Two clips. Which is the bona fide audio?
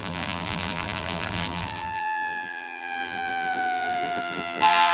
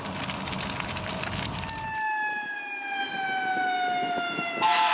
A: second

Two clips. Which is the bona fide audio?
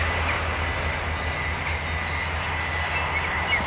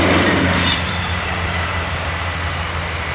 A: first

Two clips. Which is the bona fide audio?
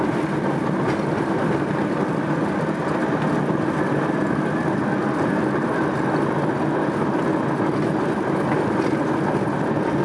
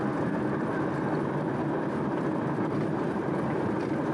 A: first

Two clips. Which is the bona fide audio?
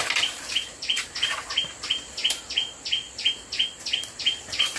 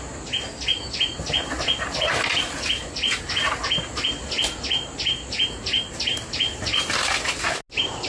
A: second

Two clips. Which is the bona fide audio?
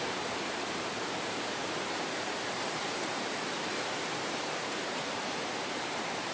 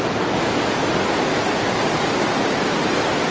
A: second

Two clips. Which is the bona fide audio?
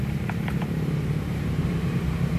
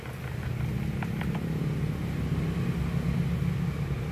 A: second